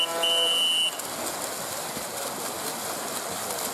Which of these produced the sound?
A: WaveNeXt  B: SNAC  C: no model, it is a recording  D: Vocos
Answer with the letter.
C